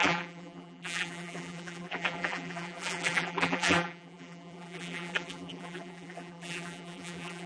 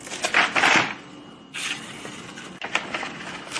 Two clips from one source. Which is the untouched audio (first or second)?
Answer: second